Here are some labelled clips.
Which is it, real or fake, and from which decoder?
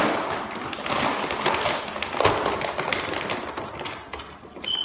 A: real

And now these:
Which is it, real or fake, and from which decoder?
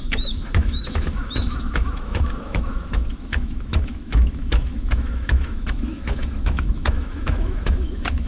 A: fake, autoencoder, DAC-VAE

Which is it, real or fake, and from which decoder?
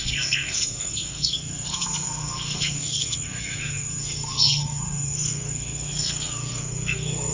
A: fake, codec, SNAC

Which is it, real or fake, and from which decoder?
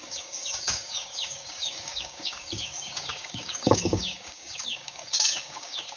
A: fake, codec, DAC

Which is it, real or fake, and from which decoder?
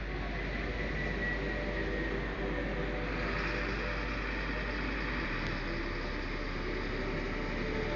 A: real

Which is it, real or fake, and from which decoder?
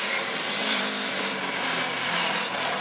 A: real